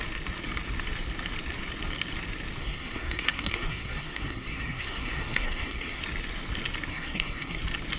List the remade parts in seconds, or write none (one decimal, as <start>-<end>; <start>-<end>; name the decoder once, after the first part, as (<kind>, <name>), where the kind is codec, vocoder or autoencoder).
2.6-6.0 (codec, SNAC); 6.9-7.6